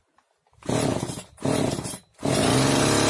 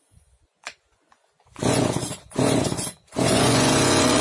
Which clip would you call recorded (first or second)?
first